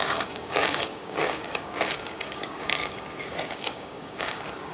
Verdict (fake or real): fake